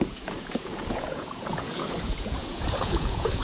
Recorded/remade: remade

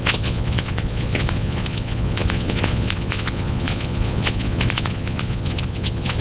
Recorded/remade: remade